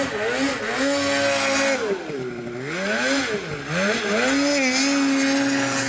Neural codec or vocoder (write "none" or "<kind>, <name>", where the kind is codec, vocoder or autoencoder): none